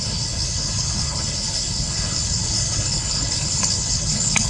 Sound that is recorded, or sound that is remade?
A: remade